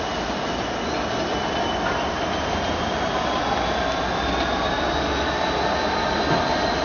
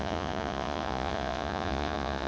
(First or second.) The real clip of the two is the first